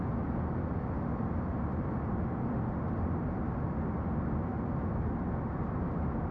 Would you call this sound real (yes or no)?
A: yes